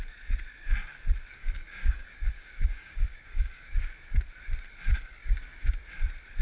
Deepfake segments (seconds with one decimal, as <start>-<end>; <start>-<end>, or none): 1.4-4.2; 5.2-5.8